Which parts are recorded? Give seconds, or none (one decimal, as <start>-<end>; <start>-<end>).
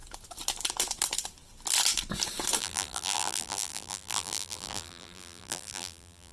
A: 0.0-2.6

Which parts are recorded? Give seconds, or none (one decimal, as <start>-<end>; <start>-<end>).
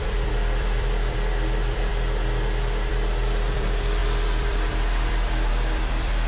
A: 1.9-2.9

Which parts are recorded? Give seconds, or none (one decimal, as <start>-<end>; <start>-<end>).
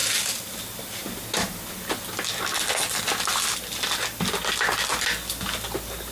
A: 0.6-6.1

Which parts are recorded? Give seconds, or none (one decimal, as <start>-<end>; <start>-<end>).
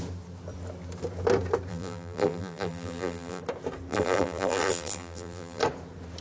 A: 0.0-1.7; 3.4-3.9; 5.6-6.2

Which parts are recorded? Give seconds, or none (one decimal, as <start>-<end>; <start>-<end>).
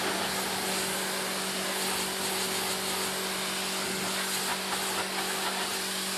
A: 0.0-6.2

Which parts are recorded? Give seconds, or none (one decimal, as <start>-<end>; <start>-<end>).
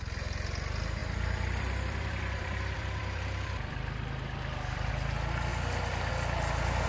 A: 0.0-1.0; 4.9-6.9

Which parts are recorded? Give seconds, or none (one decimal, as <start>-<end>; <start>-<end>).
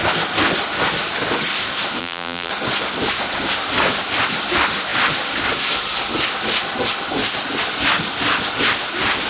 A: 0.0-2.0; 2.5-9.3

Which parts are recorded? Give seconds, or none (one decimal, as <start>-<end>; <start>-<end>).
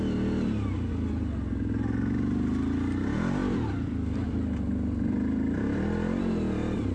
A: 0.0-3.4; 6.2-6.9